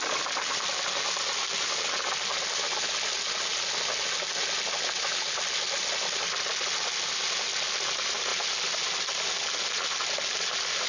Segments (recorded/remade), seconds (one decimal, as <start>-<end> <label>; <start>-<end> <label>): 0.0-10.9 recorded